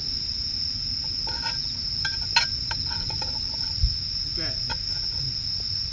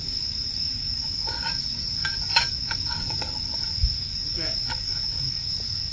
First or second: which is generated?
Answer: second